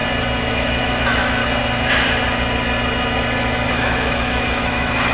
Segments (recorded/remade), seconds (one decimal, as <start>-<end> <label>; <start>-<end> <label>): 0.0-0.5 recorded; 0.5-1.4 remade; 1.4-3.7 recorded; 3.7-5.1 remade